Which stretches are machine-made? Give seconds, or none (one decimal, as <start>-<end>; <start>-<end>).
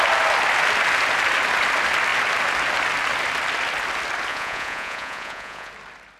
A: 4.3-5.7